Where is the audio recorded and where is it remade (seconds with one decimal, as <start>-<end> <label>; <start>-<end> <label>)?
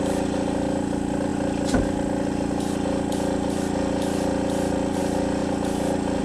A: 0.0-6.2 recorded